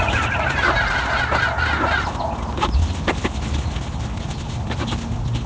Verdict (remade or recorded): recorded